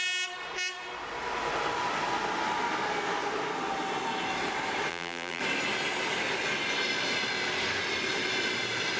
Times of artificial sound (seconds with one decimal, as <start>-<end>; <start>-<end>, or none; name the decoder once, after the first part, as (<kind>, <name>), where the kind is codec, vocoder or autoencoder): 4.9-5.4 (vocoder, BigVGAN v2)